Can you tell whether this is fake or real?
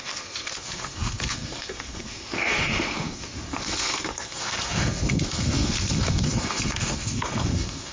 fake